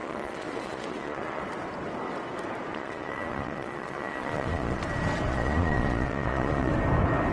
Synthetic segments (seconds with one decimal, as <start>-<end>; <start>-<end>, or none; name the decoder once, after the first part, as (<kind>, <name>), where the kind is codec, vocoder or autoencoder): 0.0-1.4 (vocoder, Vocos); 2.7-4.8; 5.3-6.7